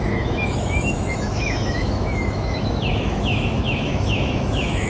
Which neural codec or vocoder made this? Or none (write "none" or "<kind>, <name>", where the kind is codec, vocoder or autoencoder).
autoencoder, DAC-VAE